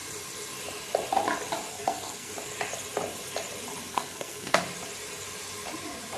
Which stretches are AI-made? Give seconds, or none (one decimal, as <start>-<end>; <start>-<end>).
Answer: 1.7-2.3; 3.9-4.6